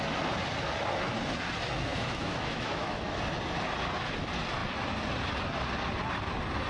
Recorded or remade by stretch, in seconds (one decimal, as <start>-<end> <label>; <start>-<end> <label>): 0.0-1.9 recorded; 1.9-3.2 remade; 3.2-6.7 recorded